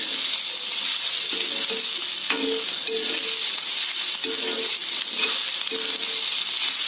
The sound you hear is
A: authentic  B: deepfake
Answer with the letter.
A